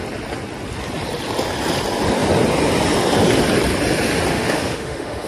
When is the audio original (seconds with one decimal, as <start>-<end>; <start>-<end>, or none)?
0.0-4.3